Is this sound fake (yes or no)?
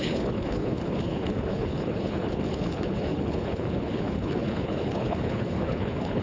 yes